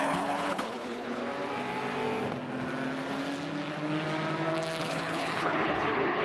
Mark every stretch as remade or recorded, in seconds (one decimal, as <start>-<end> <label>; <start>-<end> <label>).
0.0-1.2 remade; 1.2-4.8 recorded; 4.8-6.2 remade